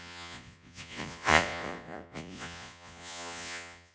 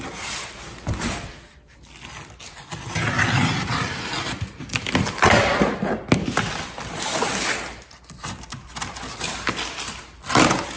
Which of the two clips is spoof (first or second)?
first